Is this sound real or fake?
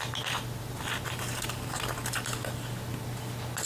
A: real